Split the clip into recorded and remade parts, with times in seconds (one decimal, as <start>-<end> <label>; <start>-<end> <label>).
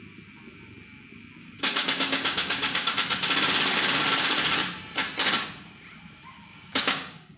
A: 0.0-1.4 recorded; 1.4-2.9 remade; 2.9-6.5 recorded; 6.5-7.4 remade